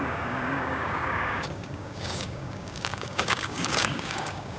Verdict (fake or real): fake